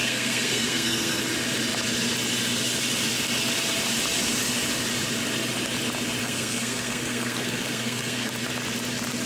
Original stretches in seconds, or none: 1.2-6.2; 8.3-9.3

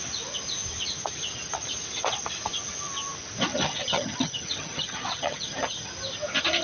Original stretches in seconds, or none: 0.0-3.5; 5.9-6.6

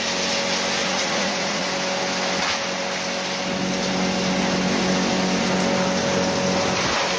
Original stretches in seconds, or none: 0.0-0.8; 1.7-7.2

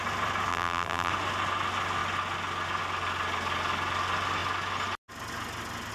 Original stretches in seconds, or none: 0.0-0.5; 1.1-5.9

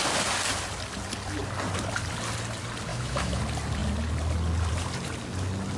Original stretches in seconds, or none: 0.0-2.9; 3.4-5.8

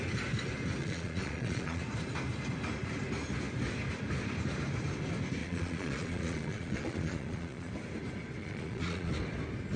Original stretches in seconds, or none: 0.0-0.8; 1.8-5.4; 7.7-8.4; 9.1-9.8

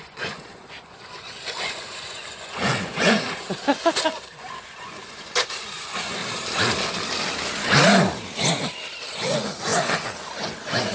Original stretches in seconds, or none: 6.2-9.1